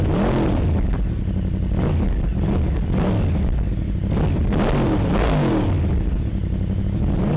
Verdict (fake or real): real